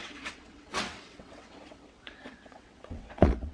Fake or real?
fake